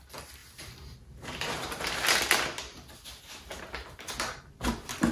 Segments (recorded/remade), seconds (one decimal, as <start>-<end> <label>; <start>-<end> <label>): 0.0-0.4 recorded; 0.4-1.9 remade; 1.9-5.1 recorded